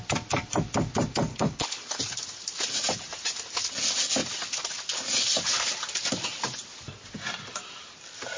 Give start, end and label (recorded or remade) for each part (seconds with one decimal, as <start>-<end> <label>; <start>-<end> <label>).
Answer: 0.0-1.3 recorded; 1.3-2.0 remade; 2.0-8.4 recorded